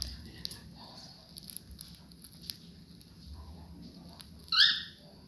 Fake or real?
real